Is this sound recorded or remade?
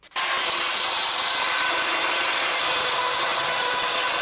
recorded